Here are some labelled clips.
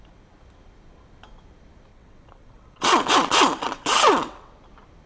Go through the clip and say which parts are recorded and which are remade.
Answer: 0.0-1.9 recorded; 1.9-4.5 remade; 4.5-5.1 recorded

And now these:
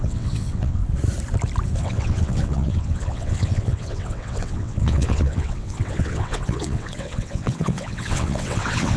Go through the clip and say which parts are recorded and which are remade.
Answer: 0.0-0.8 remade; 0.8-1.8 recorded; 1.8-9.0 remade

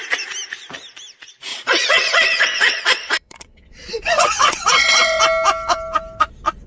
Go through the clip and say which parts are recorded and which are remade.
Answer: 0.0-1.5 recorded; 1.5-5.2 remade; 5.2-6.7 recorded

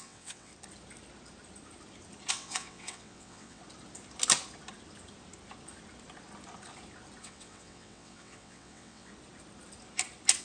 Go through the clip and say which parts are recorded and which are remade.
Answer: 0.0-0.5 remade; 0.5-2.3 recorded; 2.3-3.6 remade; 3.6-7.2 recorded; 7.2-9.1 remade; 9.1-10.4 recorded

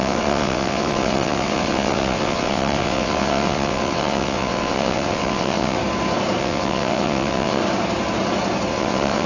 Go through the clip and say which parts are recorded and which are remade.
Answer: 0.0-5.8 remade; 5.8-6.4 recorded; 6.4-7.6 remade; 7.6-8.7 recorded; 8.7-9.3 remade

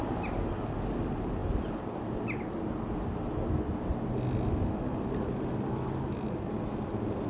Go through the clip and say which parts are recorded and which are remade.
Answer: 0.0-7.3 recorded